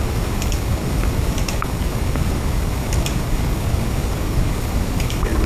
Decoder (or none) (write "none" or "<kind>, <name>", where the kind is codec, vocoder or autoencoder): codec, DAC